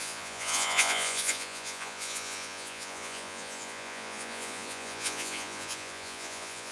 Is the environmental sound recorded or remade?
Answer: remade